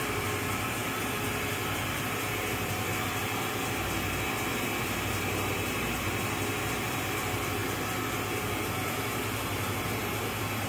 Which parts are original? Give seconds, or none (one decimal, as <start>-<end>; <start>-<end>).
7.6-9.2